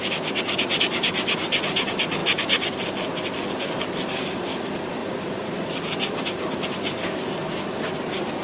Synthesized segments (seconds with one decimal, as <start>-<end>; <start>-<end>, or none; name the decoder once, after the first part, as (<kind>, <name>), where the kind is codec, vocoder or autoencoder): 5.0-5.8 (vocoder, Vocos)